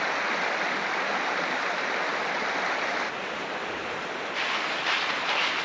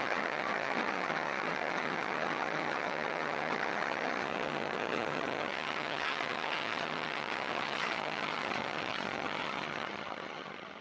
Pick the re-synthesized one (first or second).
second